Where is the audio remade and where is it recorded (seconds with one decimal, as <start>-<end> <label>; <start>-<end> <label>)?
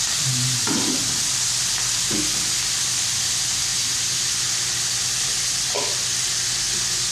0.0-3.7 remade; 3.7-4.8 recorded; 4.8-7.1 remade